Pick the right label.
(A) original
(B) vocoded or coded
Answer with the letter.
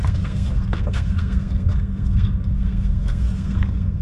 B